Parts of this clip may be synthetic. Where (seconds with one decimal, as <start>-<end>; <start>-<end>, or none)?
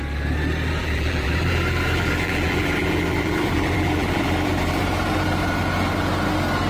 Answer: 0.8-4.8